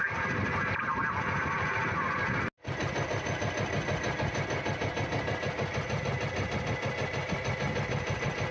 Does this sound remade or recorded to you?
recorded